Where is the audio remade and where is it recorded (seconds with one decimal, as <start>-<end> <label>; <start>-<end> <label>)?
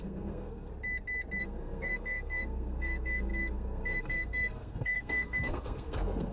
0.0-0.7 remade; 0.7-1.4 recorded; 1.4-6.3 remade